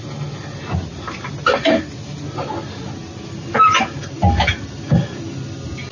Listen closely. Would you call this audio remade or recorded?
recorded